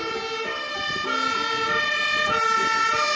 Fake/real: real